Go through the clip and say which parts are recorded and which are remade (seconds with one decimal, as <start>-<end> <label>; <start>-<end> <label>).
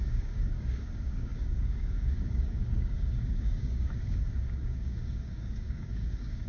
0.0-6.5 remade